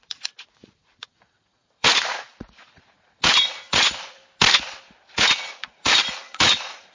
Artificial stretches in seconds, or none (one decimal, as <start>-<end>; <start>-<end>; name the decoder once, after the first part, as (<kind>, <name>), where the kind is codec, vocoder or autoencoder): 0.0-4.2 (vocoder, Vocos); 5.1-6.9